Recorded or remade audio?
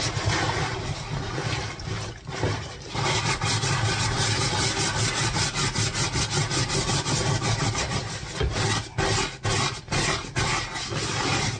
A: recorded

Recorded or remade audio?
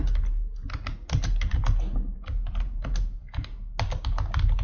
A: recorded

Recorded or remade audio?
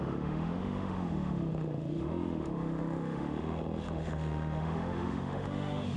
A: remade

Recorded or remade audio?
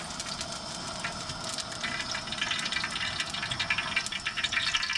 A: recorded